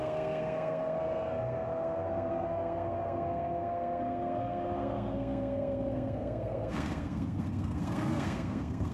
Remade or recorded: remade